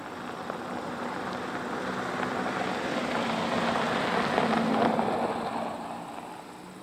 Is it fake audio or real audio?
real